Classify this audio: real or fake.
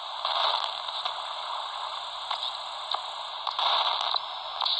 real